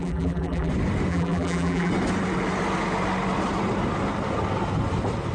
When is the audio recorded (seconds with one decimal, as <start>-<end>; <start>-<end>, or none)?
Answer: 0.7-1.1; 1.9-5.3